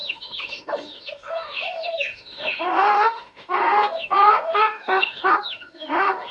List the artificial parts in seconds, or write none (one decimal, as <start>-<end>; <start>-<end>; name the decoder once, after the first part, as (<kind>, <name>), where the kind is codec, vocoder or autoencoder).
0.0-6.3 (autoencoder, DAC-VAE)

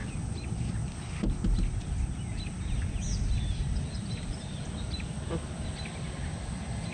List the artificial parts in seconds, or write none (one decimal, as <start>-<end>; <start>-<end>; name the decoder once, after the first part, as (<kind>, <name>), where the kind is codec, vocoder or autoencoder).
none

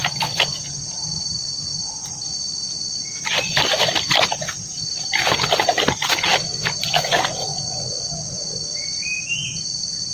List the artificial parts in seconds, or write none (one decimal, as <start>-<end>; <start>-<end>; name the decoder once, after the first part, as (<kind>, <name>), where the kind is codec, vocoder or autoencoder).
none

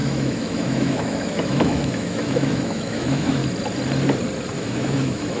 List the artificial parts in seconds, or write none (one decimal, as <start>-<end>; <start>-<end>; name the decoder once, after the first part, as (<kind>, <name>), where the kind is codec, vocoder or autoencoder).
0.0-3.4 (autoencoder, DAC-VAE); 4.6-5.4

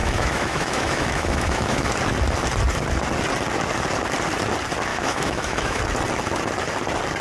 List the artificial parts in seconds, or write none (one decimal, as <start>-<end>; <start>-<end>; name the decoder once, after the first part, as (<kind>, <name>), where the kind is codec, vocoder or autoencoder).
0.0-1.9 (autoencoder, DAC-VAE); 4.9-5.8